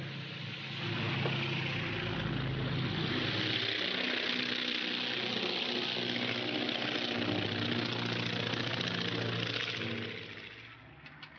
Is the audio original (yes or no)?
yes